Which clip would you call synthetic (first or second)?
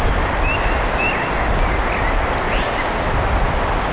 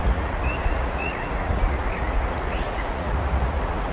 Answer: second